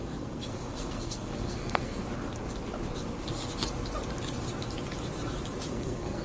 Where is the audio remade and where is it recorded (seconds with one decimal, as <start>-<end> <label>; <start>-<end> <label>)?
0.0-2.0 remade; 2.0-5.7 recorded; 5.7-6.2 remade